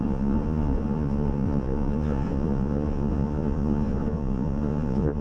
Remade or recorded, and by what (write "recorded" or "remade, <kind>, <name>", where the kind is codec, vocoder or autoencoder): remade, vocoder, Vocos